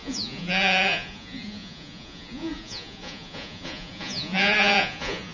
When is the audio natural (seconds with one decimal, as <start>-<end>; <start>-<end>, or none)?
none